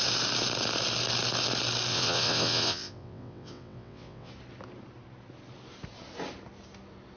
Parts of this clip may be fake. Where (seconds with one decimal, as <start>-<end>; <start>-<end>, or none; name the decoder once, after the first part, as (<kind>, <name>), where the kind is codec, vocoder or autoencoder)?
1.9-4.3 (vocoder, WaveNeXt)